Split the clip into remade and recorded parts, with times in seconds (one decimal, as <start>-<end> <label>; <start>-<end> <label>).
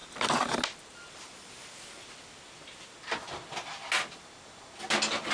0.0-5.3 recorded